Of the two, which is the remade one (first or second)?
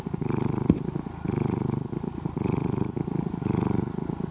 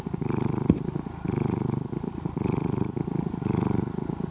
second